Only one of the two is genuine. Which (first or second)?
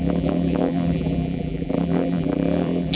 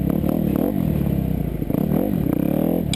second